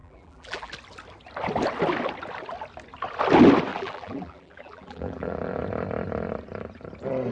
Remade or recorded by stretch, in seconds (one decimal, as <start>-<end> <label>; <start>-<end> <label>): 0.0-0.7 remade; 0.7-3.7 recorded; 3.7-5.6 remade; 5.6-7.3 recorded